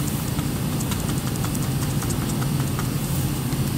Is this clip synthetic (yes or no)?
no